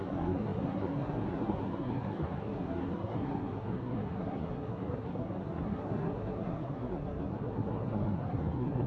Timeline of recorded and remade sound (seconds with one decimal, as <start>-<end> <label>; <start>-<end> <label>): 0.0-8.9 remade